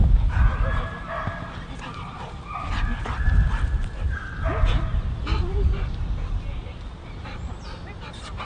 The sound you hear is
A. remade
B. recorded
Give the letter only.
B